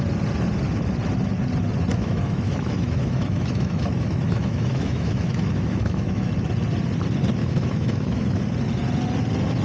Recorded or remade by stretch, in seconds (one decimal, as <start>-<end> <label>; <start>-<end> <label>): 0.0-1.9 recorded; 1.9-6.3 remade; 6.3-7.4 recorded; 7.4-8.4 remade; 8.4-9.6 recorded